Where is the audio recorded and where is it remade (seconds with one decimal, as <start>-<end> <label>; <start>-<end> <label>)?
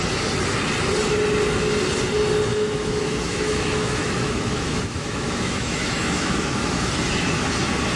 0.0-2.5 recorded; 2.5-6.9 remade; 6.9-8.0 recorded